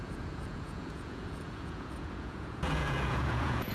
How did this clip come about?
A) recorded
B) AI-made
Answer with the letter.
B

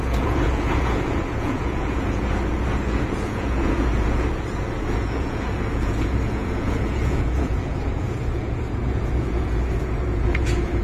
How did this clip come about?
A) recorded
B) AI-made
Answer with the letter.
B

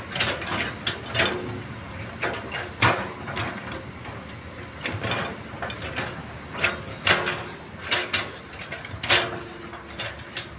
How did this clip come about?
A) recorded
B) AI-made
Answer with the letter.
A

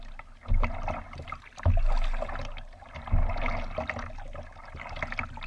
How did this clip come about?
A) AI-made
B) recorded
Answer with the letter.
B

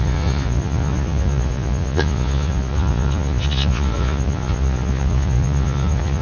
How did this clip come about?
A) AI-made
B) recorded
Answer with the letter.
A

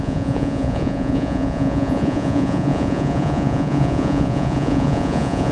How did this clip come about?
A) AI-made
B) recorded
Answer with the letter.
A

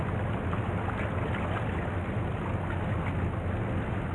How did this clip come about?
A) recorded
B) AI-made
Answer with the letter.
A